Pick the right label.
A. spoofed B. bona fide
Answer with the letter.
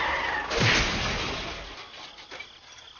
B